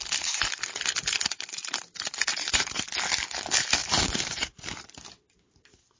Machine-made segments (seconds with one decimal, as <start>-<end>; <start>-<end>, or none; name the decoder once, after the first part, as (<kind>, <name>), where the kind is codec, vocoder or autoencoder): 2.3-2.8 (vocoder, BigVGAN v2); 3.8-4.9